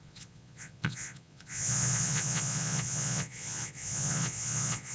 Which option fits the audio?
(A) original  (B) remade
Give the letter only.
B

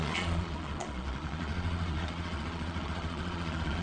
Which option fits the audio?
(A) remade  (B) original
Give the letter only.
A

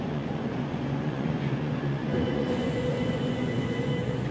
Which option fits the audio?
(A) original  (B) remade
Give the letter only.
B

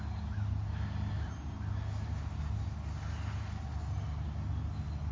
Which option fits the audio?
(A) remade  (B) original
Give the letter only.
B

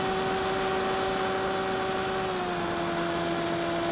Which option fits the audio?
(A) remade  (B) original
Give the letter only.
B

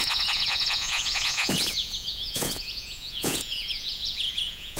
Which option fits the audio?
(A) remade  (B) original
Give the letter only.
A